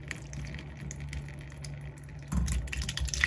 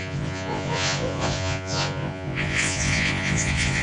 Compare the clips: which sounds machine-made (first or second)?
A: second